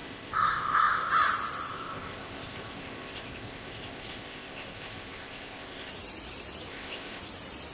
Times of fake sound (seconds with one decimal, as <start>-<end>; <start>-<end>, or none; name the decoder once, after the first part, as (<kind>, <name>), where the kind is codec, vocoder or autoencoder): 0.0-1.1 (codec, ZipCodec); 1.7-5.9; 6.7-7.2